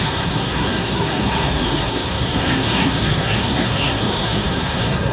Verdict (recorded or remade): remade